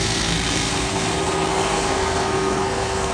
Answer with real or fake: fake